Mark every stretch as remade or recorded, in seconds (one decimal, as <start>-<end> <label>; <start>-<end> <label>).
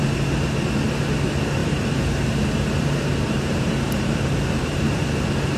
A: 0.0-1.6 recorded; 1.6-5.0 remade; 5.0-5.6 recorded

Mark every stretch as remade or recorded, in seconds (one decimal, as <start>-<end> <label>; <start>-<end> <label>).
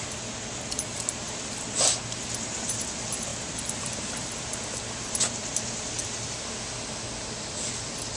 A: 0.0-8.2 recorded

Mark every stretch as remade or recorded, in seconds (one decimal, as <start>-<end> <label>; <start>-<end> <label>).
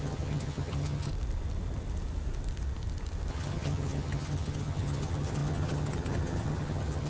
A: 0.0-1.1 remade; 1.1-3.3 recorded; 3.3-7.1 remade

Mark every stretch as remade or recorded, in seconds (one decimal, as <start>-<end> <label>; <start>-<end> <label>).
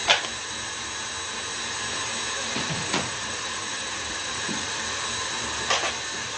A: 0.0-2.4 recorded; 2.4-5.0 remade; 5.0-6.4 recorded